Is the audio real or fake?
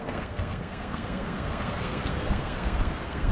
fake